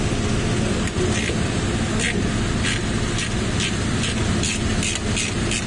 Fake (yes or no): no